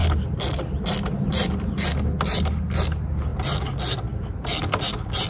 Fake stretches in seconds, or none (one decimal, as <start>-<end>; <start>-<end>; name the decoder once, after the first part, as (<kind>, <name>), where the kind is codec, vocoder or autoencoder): none